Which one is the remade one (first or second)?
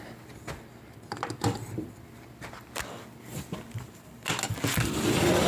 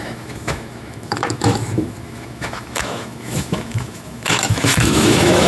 second